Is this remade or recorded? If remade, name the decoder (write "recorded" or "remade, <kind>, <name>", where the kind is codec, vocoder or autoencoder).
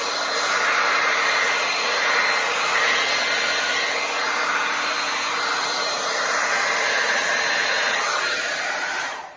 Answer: recorded